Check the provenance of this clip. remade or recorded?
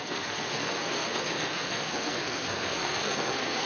remade